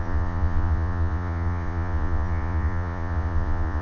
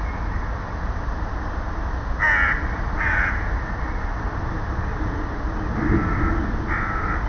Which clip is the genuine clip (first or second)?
second